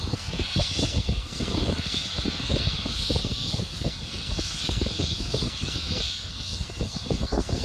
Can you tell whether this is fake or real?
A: fake